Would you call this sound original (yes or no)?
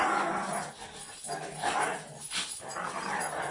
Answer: yes